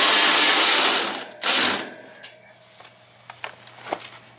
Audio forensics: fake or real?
real